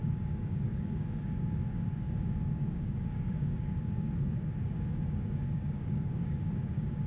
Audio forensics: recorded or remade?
remade